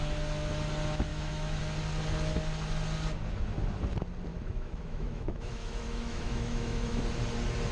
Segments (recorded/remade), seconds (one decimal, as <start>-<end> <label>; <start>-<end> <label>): 0.0-1.1 recorded; 1.1-1.6 remade; 1.6-4.3 recorded; 4.3-7.0 remade; 7.0-7.7 recorded